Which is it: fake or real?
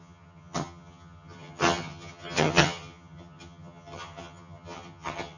fake